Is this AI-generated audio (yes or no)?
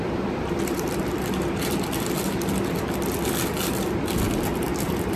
yes